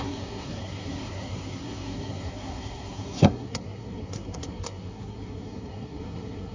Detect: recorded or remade remade